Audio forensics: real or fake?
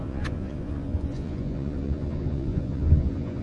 fake